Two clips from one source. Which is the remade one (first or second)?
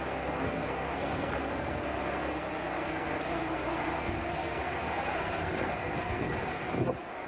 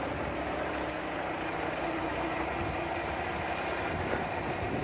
first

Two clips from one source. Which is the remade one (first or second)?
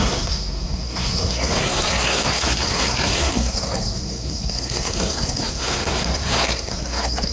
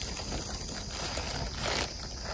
first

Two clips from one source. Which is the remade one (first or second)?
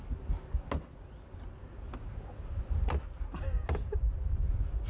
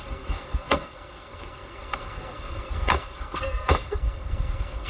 second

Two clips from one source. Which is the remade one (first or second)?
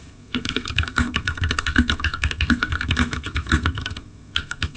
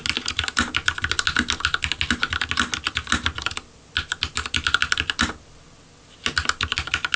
first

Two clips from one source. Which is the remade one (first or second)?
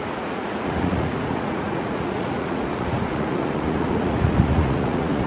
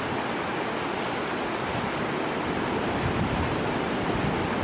first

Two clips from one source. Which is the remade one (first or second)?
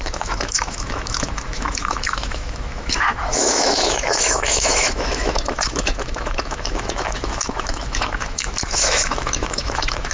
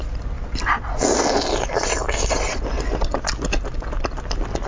first